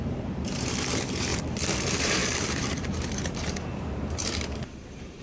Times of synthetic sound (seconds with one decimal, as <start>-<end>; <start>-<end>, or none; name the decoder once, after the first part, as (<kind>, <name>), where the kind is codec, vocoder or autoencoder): 0.0-5.2 (vocoder, BigVGAN v2)